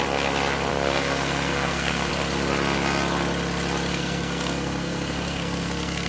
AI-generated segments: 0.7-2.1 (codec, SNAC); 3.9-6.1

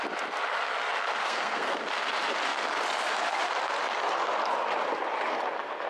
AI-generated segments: 1.2-1.8 (codec, SNAC)

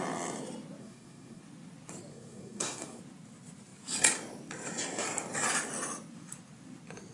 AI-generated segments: 0.8-1.4 (codec, SNAC); 2.1-3.0

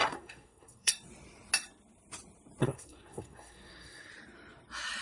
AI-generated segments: 0.0-0.9 (codec, SNAC); 2.6-4.1

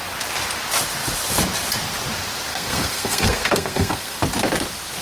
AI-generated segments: 2.5-4.2 (codec, SNAC)

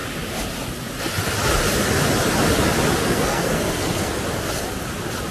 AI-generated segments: 3.0-4.2 (codec, SNAC)